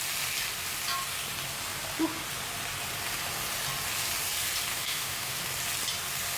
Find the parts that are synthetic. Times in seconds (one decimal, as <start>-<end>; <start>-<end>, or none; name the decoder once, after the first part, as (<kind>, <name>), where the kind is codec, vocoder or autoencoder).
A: 4.7-5.4 (autoencoder, DAC-VAE)